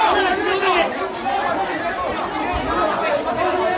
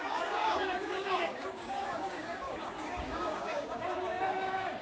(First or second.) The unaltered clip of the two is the first